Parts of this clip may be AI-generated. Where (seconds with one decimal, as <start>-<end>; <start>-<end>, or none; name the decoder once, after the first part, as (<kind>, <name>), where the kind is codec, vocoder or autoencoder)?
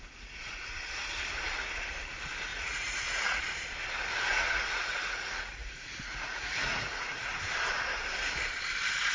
2.5-3.4 (vocoder, Vocos); 4.3-7.3